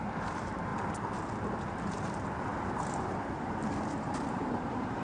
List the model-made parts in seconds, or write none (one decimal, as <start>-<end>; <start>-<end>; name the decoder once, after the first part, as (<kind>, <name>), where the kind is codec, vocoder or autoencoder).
0.0-0.7 (vocoder, BigVGAN v2); 1.5-5.0